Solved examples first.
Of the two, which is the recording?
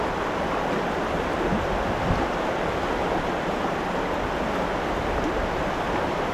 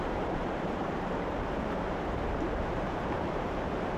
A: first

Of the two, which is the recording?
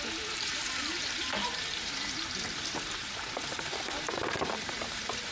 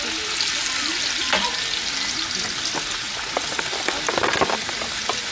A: second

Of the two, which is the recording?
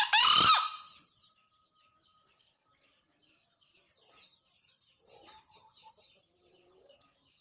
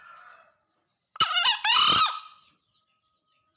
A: second